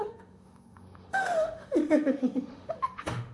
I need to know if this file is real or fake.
fake